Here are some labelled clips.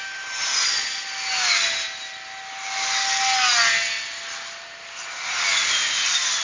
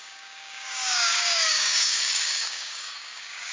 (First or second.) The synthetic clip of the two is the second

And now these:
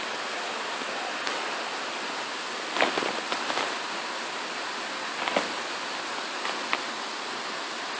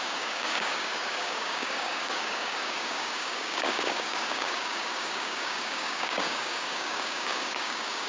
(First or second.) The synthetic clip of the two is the second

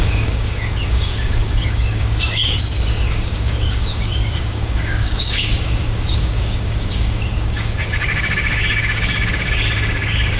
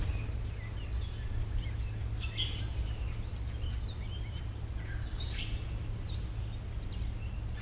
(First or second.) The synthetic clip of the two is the first